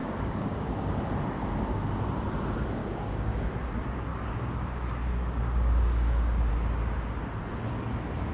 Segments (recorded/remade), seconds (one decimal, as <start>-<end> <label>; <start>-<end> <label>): 0.0-1.0 remade; 1.0-2.8 recorded; 2.8-3.5 remade; 3.5-4.1 recorded; 4.1-6.5 remade; 6.5-8.3 recorded